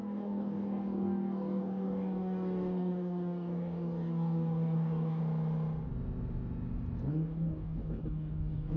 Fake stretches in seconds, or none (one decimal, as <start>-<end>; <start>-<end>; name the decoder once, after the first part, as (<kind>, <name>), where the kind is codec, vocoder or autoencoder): 0.0-5.2 (codec, DAC); 7.1-8.8